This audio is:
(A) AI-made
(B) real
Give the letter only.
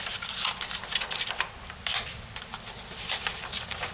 B